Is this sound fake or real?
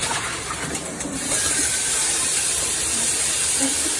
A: fake